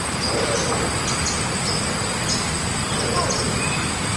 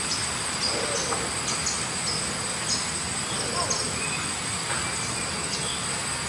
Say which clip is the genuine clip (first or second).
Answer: second